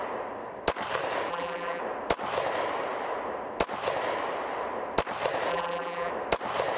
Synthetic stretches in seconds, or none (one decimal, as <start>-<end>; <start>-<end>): 1.3-1.8; 5.5-6.1